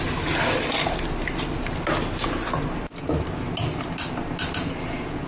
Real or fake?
real